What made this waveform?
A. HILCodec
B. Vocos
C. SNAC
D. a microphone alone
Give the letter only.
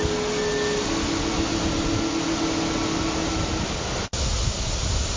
D